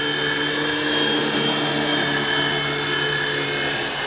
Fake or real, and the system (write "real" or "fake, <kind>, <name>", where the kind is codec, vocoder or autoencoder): real